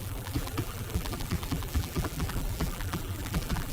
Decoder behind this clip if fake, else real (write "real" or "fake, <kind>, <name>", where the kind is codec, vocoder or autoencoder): fake, vocoder, BigVGAN v2